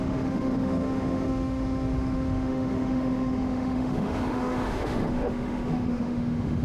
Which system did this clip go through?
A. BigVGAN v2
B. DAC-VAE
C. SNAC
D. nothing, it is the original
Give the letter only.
B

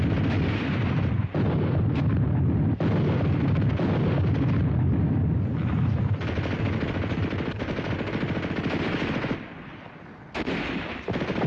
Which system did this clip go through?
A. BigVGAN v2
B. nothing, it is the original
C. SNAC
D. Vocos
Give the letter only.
A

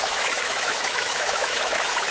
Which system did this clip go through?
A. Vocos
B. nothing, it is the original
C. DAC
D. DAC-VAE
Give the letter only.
D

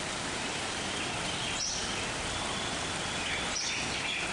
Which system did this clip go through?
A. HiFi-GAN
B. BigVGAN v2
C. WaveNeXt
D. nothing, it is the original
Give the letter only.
D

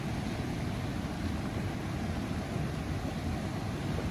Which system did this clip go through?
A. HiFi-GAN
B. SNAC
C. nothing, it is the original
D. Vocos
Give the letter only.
C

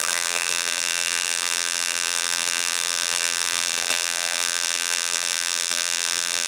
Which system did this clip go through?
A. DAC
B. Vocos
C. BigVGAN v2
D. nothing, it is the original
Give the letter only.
C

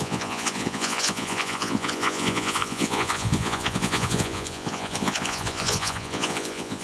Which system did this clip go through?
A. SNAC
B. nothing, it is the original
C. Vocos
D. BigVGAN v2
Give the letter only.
C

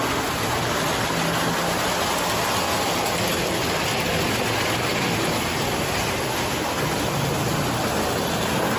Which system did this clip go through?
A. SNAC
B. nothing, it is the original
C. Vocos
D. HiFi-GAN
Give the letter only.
B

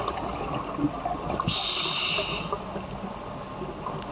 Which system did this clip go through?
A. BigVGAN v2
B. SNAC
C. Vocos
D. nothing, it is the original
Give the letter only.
D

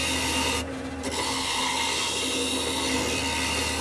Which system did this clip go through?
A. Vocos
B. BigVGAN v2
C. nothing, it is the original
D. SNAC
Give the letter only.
C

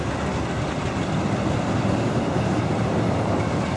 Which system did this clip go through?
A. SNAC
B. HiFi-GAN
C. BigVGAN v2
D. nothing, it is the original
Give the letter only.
D